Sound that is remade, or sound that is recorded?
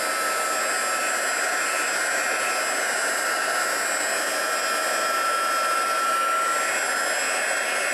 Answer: recorded